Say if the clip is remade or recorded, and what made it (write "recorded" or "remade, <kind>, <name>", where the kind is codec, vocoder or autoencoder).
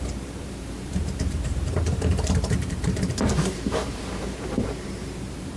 remade, vocoder, BigVGAN v2